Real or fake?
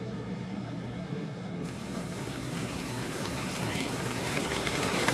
fake